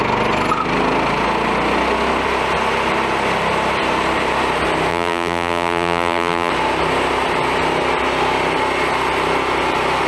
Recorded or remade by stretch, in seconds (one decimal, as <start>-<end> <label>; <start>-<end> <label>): 0.0-4.9 recorded; 4.9-6.5 remade; 6.5-10.1 recorded